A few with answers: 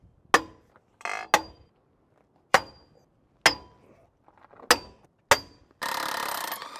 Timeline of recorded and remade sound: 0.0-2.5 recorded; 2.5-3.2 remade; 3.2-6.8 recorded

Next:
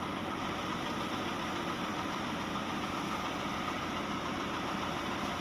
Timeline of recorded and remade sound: 0.0-1.9 recorded; 1.9-5.4 remade